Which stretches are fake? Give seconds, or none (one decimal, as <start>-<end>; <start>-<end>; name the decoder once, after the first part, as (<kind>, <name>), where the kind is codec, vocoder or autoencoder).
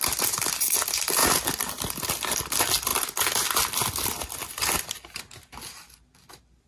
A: none